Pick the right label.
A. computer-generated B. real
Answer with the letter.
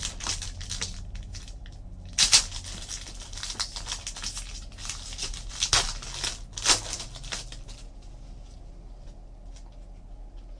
B